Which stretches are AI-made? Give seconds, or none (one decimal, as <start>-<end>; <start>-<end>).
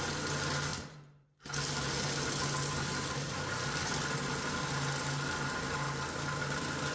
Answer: 0.7-1.4